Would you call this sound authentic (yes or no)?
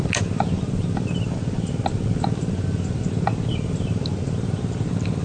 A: yes